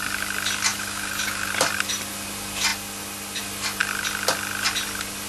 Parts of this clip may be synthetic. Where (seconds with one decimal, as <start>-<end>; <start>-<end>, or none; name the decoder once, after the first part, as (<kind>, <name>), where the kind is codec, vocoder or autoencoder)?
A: 0.7-1.5 (autoencoder, DAC-VAE)